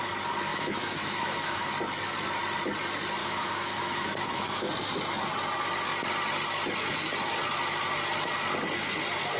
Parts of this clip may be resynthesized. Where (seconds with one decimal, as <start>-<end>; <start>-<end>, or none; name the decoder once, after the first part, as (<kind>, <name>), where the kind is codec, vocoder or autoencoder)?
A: 0.5-1.7 (autoencoder, DAC-VAE); 3.2-4.7